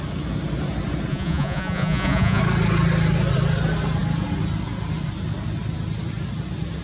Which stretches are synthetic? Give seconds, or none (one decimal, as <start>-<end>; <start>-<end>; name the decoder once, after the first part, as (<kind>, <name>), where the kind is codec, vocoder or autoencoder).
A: 1.1-2.4 (vocoder, Vocos)